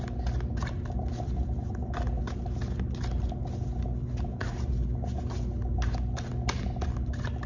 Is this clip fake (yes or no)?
no